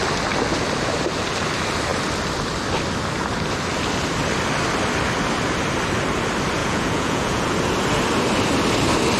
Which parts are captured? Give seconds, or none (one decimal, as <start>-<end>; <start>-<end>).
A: 0.0-6.6; 7.5-9.2

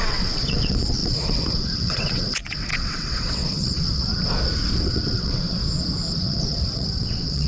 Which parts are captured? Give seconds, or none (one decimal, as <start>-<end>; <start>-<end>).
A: 4.1-4.8; 5.6-6.2

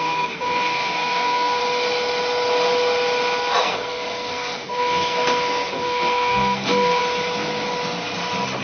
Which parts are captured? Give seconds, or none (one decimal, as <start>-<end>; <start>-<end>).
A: 1.6-3.6; 7.0-8.6

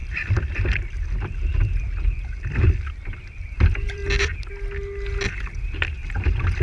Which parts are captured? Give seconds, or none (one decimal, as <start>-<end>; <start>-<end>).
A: 4.0-6.1